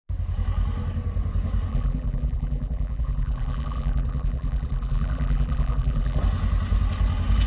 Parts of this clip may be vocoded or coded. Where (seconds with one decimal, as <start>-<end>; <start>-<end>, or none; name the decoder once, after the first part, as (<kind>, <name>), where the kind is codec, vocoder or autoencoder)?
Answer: 1.7-6.2 (vocoder, BigVGAN v2)